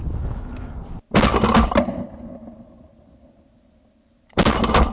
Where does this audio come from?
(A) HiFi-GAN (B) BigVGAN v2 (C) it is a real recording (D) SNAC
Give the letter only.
C